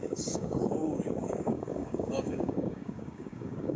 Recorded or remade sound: remade